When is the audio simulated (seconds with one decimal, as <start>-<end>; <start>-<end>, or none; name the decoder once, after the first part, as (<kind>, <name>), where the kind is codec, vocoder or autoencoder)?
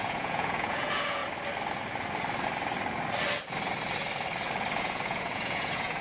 0.0-1.2 (vocoder, Vocos); 4.8-6.0